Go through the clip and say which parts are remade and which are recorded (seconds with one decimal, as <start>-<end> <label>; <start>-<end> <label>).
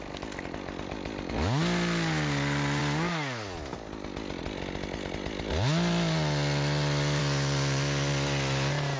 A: 0.0-9.0 recorded